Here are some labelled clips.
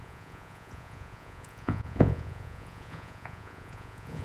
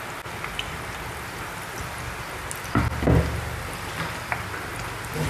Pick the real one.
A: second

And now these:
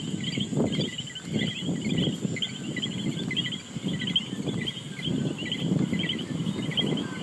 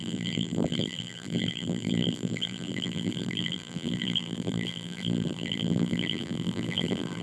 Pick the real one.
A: first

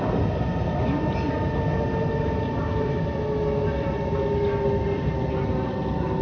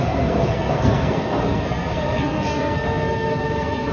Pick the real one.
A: first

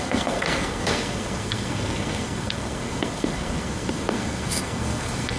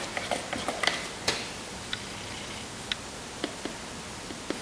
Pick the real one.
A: second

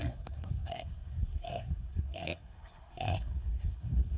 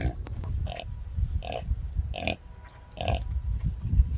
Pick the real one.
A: second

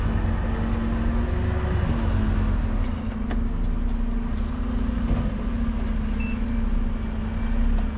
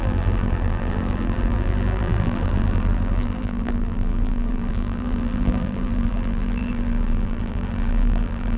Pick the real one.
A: first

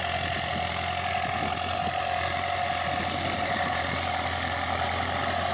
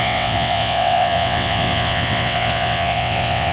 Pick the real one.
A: first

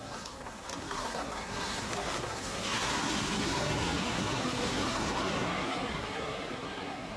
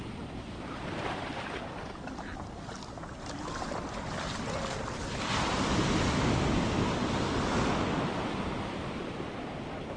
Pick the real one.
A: second